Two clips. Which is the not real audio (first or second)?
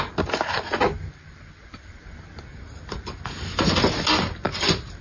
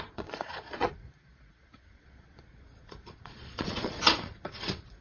second